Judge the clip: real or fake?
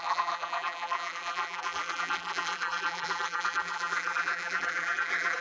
fake